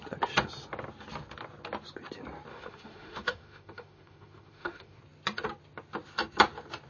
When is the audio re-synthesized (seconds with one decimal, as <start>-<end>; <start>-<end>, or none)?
2.5-5.0